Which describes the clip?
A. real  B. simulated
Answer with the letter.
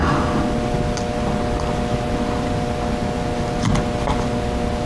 A